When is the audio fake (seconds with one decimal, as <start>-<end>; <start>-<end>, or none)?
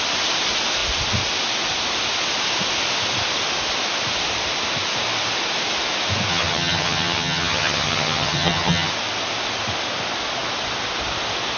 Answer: 6.3-8.9